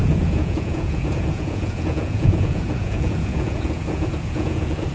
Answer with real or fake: fake